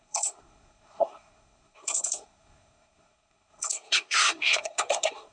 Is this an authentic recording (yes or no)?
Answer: no